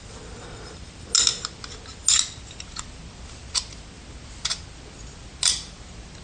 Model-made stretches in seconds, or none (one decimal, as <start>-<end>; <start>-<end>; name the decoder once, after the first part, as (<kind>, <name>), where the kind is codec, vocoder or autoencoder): none